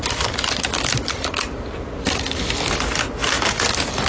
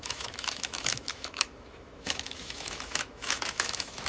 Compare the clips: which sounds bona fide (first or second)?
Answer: first